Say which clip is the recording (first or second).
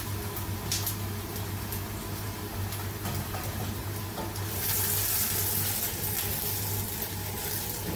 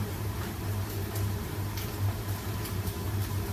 first